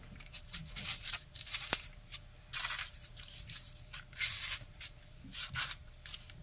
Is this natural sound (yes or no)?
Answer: no